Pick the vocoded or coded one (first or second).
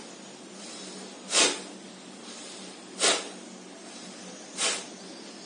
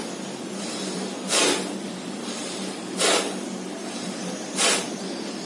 second